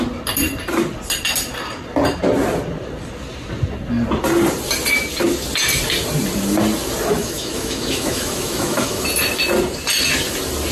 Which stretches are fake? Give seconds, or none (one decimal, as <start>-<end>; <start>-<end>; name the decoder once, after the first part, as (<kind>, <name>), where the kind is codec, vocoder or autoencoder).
7.2-9.1 (autoencoder, DAC-VAE)